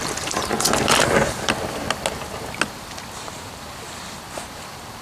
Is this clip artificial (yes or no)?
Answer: no